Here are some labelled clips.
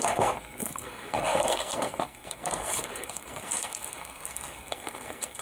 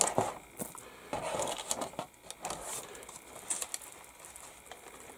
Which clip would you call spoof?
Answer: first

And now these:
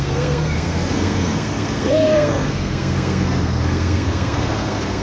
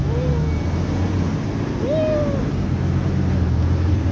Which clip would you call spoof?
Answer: first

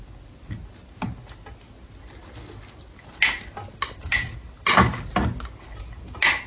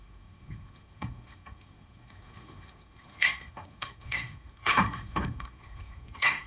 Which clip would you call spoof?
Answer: second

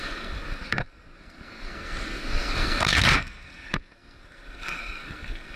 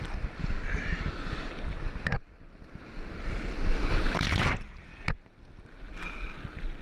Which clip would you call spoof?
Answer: first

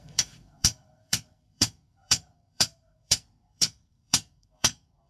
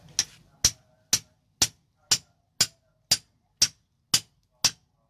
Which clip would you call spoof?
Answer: first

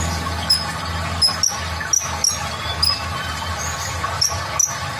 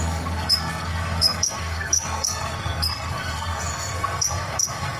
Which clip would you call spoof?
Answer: second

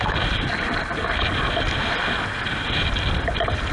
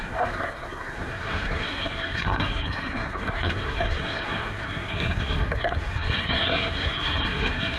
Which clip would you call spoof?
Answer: second